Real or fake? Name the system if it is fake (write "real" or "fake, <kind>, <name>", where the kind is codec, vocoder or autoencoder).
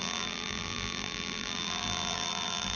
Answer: fake, vocoder, BigVGAN v2